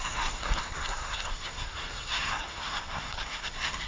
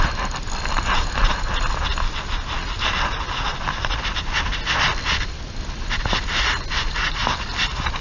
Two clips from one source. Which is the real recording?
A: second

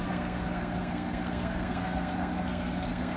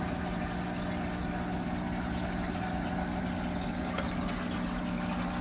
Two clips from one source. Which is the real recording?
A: second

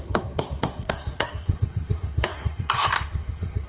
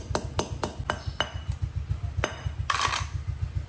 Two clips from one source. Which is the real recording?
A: second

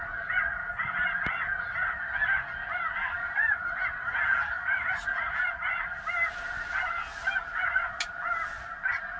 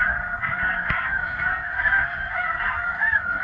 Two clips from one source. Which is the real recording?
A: first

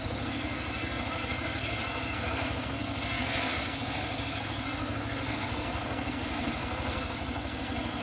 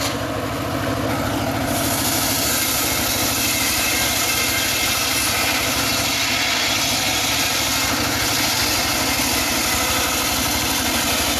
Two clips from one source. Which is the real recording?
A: second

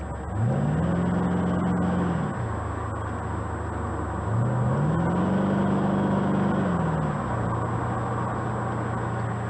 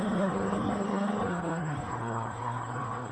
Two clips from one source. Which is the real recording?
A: first